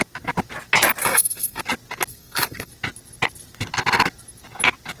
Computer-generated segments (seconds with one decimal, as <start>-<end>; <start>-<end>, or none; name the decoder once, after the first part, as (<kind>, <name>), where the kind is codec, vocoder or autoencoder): 1.0-1.6 (codec, SNAC); 2.1-2.7